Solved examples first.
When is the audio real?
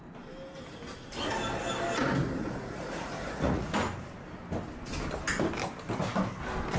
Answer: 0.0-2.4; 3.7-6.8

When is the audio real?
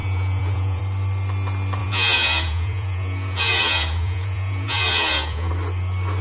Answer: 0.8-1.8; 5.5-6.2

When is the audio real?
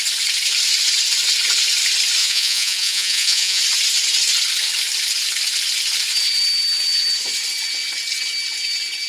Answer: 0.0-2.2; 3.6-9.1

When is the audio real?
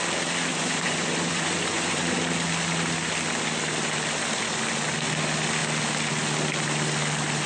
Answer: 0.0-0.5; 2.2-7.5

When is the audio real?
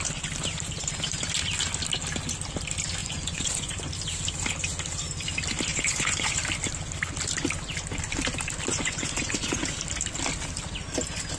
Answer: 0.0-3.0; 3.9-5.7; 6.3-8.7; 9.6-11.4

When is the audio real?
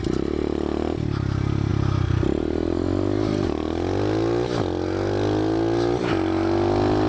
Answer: 0.0-7.1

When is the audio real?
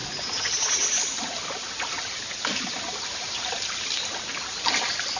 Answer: 0.0-5.2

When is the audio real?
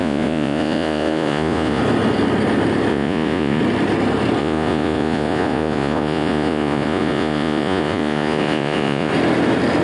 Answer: 1.8-2.9; 3.6-4.4; 9.1-9.8